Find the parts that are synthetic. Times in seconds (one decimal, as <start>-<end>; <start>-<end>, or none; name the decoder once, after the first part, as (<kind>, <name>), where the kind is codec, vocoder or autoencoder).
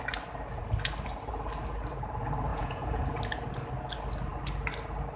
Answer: 2.5-3.0 (vocoder, Vocos)